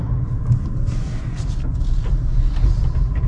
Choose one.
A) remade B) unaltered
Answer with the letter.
B